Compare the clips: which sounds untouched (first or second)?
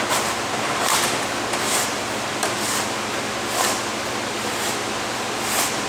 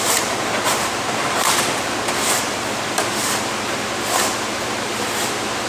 first